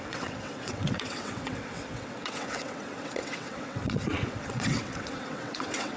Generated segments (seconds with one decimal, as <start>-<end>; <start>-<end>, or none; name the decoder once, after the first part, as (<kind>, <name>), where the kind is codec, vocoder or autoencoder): 0.0-6.0 (vocoder, WaveNeXt)